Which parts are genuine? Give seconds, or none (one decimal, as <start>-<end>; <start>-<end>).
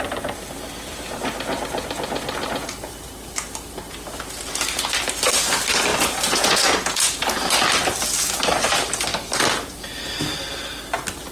0.0-2.4; 2.9-5.9; 7.3-11.3